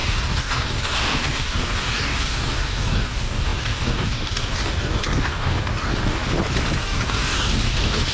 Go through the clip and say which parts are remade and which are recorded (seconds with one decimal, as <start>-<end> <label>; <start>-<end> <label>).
0.0-6.2 remade; 6.2-6.8 recorded; 6.8-8.1 remade